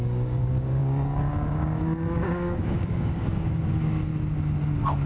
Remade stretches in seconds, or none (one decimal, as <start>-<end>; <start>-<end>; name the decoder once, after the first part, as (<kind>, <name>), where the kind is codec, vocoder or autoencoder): 0.0-4.1 (codec, DAC)